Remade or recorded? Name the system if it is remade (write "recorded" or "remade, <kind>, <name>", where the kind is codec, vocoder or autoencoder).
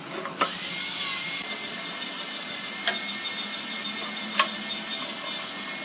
recorded